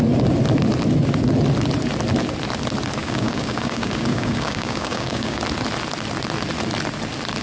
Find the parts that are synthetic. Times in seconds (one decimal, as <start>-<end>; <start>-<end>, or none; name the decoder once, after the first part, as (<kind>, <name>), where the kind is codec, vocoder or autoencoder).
3.0-5.4 (codec, DAC)